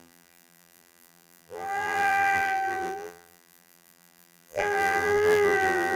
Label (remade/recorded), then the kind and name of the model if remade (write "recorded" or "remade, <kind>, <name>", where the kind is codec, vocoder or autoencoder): remade, vocoder, BigVGAN v2